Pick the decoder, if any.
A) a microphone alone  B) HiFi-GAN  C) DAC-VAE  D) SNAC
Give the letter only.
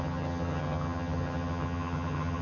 B